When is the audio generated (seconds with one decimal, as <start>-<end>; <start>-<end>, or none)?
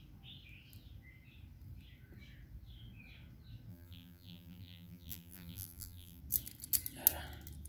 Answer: 3.7-6.2